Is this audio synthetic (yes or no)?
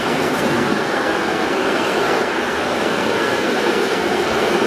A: yes